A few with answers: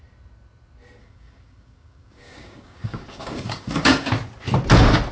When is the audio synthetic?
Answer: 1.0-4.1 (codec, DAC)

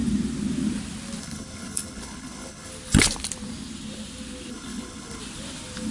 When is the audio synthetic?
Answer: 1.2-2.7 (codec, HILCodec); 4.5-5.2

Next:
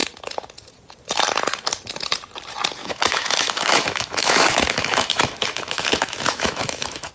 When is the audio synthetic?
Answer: 2.8-7.1 (autoencoder, DAC-VAE)